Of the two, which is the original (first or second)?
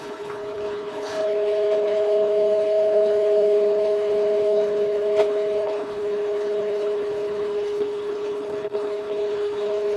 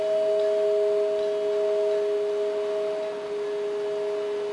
second